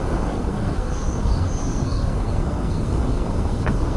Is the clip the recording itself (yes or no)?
no